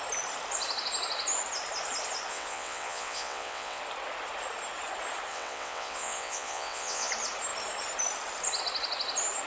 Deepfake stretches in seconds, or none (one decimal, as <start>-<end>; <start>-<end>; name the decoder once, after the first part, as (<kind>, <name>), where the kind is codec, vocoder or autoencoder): 2.3-3.8 (vocoder, WaveNeXt); 5.3-7.1